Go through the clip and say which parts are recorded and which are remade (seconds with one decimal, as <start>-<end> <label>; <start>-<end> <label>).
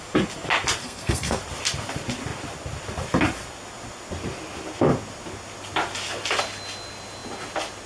0.0-0.8 recorded; 0.8-1.4 remade; 1.4-7.9 recorded